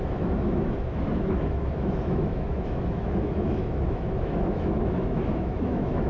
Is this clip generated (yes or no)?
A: yes